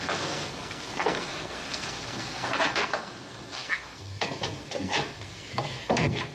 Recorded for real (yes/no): no